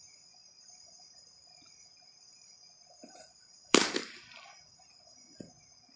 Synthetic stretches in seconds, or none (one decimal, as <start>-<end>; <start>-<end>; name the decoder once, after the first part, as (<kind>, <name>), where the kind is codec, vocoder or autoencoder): 0.4-4.0 (vocoder, BigVGAN v2)

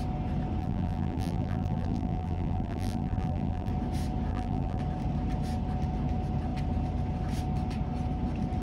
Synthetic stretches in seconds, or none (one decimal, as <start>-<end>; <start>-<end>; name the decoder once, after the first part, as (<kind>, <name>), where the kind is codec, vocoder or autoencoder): 0.6-3.7 (vocoder, BigVGAN v2); 4.3-4.8

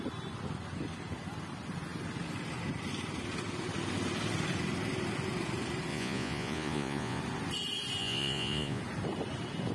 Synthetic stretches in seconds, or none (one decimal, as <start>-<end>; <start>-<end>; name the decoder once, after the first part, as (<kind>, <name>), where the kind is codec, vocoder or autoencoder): 5.9-7.2 (vocoder, Vocos); 8.0-8.8

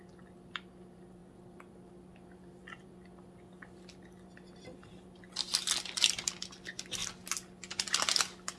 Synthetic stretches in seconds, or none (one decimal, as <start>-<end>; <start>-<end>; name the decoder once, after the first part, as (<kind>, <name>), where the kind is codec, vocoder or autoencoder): 1.2-5.7 (vocoder, BigVGAN v2); 7.0-8.1